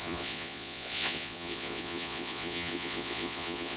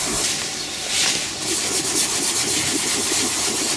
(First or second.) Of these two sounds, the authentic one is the second